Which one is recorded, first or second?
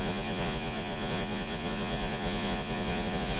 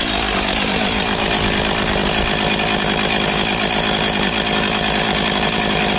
second